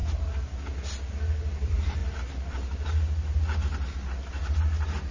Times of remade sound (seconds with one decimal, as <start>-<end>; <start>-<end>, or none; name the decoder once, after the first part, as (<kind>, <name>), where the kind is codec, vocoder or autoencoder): 1.1-2.0 (vocoder, BigVGAN v2)